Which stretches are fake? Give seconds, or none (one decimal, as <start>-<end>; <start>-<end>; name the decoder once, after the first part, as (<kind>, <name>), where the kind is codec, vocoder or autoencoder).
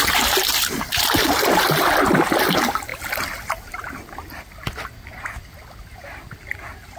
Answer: none